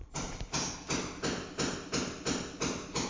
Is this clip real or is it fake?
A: real